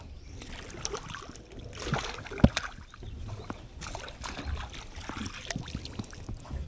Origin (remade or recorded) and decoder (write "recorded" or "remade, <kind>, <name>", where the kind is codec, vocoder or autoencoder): recorded